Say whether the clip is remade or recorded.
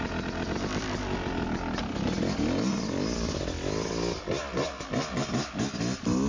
recorded